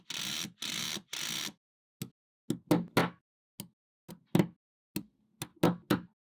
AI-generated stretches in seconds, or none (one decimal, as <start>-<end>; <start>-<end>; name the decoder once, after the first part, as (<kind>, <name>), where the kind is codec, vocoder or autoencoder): none